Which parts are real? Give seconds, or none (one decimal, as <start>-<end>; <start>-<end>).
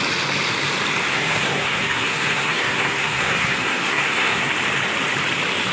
0.0-1.1; 4.5-5.7